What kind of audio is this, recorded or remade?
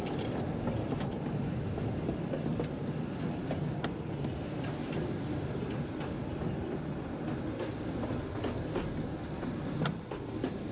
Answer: recorded